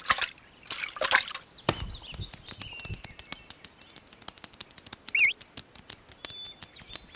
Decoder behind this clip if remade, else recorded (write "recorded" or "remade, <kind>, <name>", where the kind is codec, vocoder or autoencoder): recorded